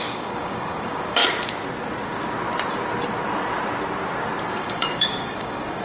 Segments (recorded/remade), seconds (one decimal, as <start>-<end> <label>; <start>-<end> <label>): 0.0-1.2 remade; 1.2-4.5 recorded; 4.5-5.8 remade